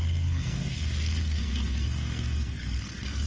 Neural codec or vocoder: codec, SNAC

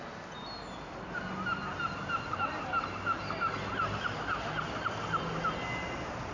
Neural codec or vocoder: none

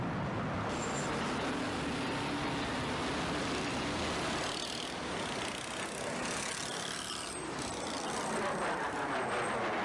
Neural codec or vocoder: none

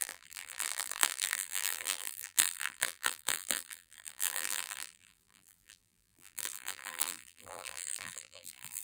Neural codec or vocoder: vocoder, BigVGAN v2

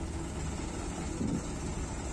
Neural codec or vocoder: none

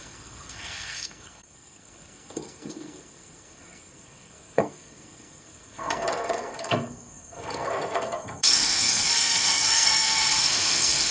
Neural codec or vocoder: codec, SNAC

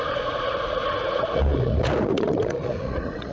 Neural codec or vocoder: vocoder, Vocos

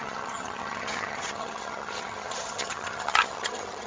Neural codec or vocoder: vocoder, HiFi-GAN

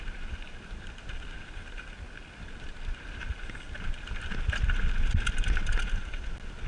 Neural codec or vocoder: none